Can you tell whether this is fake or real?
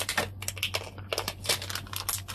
real